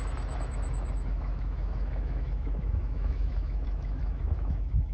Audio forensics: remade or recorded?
remade